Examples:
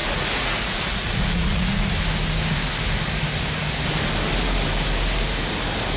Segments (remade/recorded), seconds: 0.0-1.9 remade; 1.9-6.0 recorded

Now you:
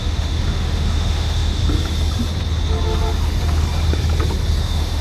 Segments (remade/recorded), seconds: 0.0-1.6 remade; 1.6-4.6 recorded; 4.6-5.0 remade

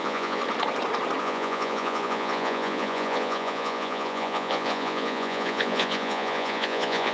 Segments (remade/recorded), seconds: 0.0-0.4 remade; 0.4-1.2 recorded; 1.2-7.1 remade

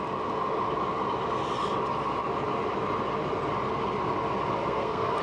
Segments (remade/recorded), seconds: 0.0-4.6 recorded; 4.6-5.2 remade

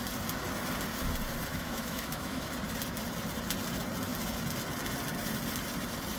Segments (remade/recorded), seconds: 0.0-1.5 recorded; 1.5-2.5 remade; 2.5-6.2 recorded

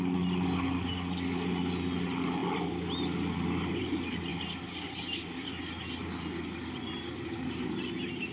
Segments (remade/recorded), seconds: 0.0-8.3 recorded